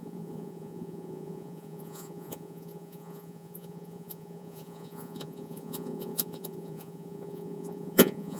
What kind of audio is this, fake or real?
fake